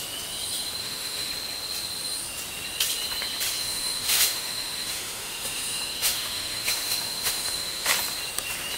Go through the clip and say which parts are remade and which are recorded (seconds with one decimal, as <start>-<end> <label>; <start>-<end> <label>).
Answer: 0.0-0.8 recorded; 0.8-1.3 remade; 1.3-3.6 recorded; 3.6-7.9 remade; 7.9-8.8 recorded